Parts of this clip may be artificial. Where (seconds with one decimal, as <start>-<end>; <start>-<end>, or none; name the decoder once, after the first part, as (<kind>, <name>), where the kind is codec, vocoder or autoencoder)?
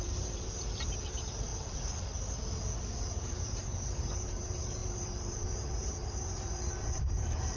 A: 0.0-1.5 (vocoder, BigVGAN v2); 3.2-7.6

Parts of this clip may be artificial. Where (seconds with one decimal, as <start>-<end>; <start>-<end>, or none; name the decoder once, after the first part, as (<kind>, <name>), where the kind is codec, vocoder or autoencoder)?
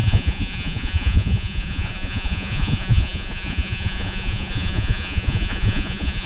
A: 0.0-6.3 (vocoder, Vocos)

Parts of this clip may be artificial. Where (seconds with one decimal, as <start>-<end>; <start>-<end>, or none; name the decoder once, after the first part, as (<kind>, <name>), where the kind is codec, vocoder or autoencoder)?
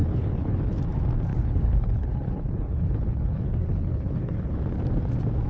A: 0.0-0.8 (codec, HILCodec); 1.3-4.6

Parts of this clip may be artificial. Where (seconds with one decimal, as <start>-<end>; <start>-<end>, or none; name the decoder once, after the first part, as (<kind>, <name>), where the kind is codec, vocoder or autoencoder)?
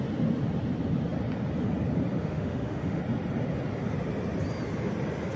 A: 2.2-3.0 (autoencoder, DAC-VAE)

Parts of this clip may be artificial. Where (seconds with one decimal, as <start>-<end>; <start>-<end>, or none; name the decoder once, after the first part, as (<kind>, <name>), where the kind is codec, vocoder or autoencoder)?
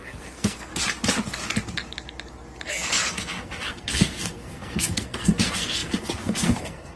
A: 0.0-0.7 (codec, SNAC); 2.7-7.0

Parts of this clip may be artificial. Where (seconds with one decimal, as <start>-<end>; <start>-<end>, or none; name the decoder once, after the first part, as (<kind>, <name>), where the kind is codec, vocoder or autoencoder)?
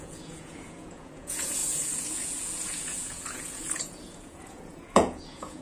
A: 0.0-5.6 (vocoder, Vocos)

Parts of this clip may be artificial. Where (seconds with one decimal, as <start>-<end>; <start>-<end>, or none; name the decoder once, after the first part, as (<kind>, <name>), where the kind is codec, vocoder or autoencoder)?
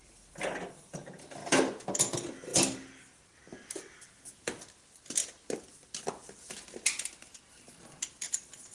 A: none